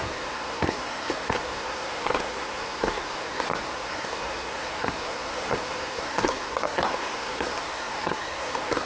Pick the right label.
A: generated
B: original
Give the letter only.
A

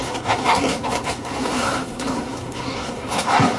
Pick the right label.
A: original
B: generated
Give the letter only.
B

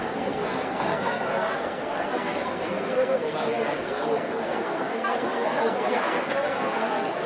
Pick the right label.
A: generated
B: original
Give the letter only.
A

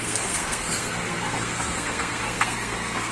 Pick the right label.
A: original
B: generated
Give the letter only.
B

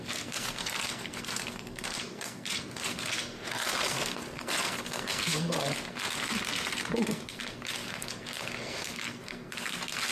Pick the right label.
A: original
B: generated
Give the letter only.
B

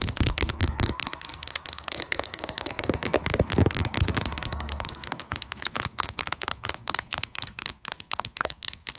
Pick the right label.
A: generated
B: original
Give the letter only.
A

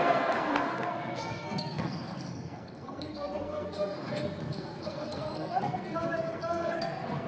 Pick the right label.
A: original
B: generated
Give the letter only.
B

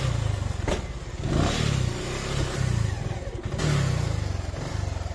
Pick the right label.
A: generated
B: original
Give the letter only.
B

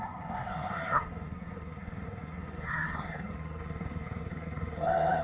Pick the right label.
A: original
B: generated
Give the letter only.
B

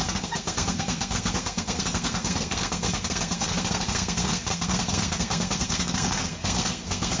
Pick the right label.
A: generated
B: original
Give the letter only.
A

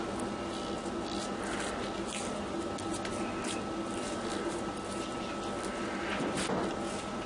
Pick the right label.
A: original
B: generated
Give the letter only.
A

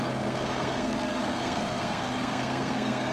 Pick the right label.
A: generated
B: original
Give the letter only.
A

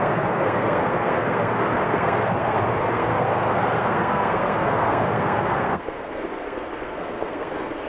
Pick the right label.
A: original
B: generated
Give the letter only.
B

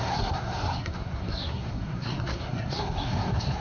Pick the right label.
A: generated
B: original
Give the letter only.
A